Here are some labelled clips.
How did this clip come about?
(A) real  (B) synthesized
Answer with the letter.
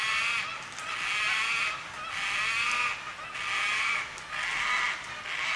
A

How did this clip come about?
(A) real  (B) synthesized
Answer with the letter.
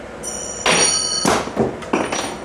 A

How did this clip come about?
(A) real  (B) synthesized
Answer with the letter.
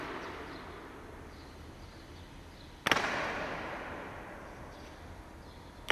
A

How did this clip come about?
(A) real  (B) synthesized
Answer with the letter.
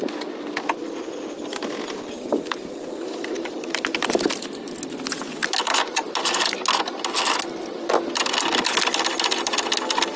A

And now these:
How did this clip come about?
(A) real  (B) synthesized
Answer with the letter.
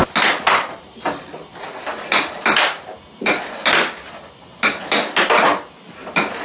A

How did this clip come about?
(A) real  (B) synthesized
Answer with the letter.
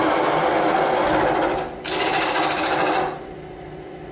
A